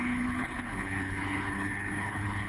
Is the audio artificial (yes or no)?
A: yes